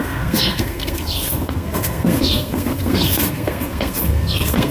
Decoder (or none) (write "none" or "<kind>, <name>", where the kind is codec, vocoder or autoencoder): codec, SNAC